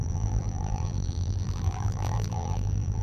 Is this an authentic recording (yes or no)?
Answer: no